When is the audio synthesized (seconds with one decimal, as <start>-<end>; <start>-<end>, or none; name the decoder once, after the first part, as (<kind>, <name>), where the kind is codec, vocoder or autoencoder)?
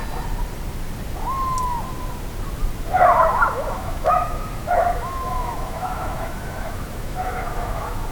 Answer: 3.4-8.1 (autoencoder, DAC-VAE)